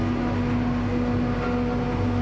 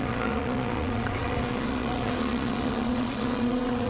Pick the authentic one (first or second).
first